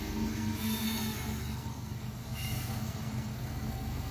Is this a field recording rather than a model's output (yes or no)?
no